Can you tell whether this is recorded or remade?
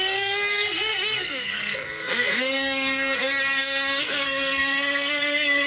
remade